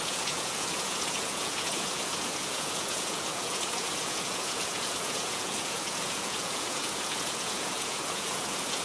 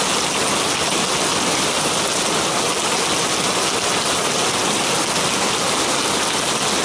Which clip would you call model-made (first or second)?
first